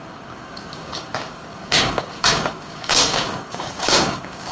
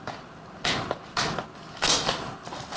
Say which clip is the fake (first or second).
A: first